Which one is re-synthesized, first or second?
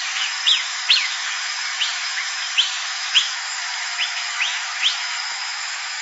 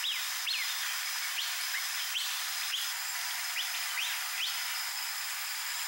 first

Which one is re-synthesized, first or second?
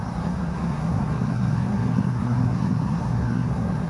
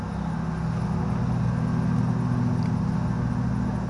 first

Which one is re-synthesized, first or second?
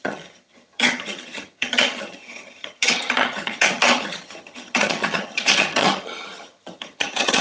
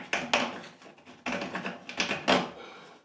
first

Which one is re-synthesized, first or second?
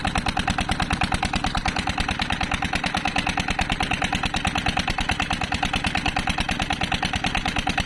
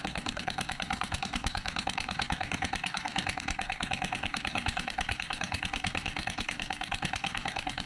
second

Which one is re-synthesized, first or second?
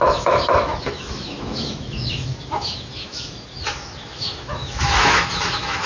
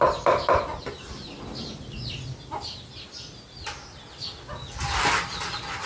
first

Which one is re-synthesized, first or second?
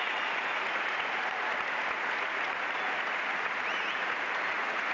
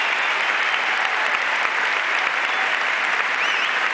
first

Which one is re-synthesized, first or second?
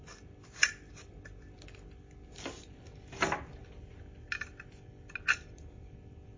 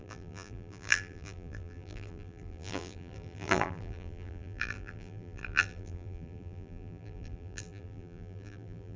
second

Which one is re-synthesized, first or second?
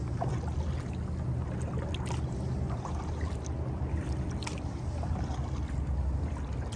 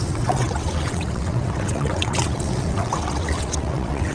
second